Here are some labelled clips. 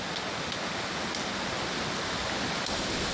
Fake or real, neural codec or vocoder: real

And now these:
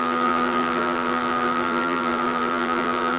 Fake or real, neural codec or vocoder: fake, vocoder, BigVGAN v2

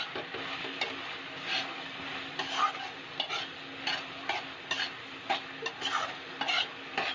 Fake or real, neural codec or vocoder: real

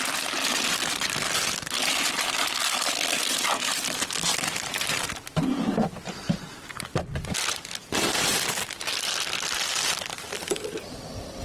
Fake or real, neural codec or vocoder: fake, vocoder, BigVGAN v2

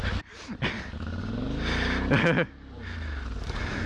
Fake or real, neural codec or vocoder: real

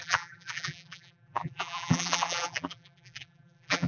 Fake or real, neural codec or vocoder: fake, vocoder, BigVGAN v2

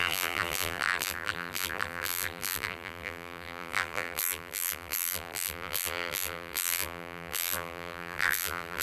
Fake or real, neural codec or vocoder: fake, vocoder, BigVGAN v2